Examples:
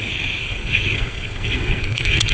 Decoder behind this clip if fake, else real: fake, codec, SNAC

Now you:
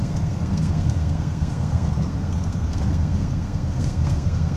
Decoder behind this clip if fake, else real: fake, codec, SNAC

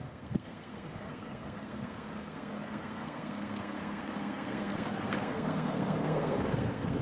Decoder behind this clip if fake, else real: fake, codec, SNAC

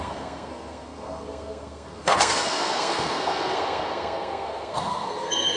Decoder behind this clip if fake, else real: fake, codec, SNAC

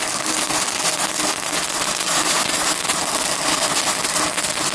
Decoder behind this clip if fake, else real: real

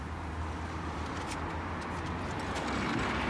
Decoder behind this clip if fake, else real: real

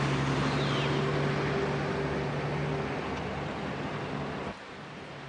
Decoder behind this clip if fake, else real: real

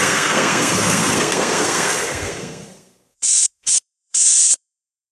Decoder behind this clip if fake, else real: fake, codec, SNAC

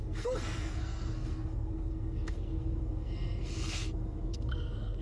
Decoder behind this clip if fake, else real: fake, codec, SNAC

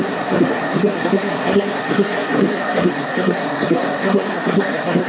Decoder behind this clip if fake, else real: fake, codec, SNAC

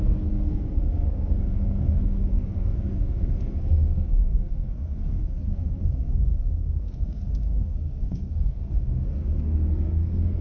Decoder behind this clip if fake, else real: fake, codec, SNAC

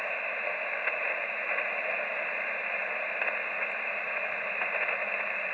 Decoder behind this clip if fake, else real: real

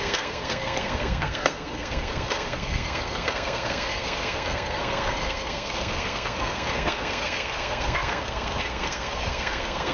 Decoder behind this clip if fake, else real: fake, codec, SNAC